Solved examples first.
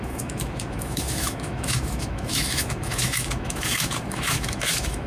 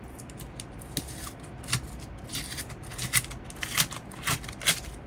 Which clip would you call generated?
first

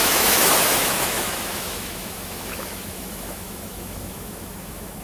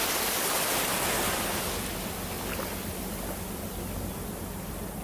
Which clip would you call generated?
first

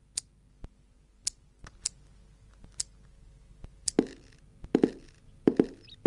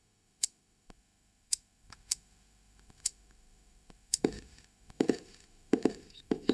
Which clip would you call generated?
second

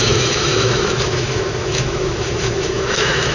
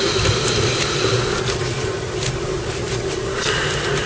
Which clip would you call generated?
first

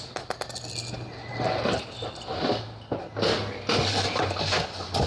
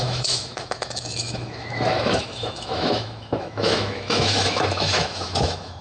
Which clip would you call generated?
second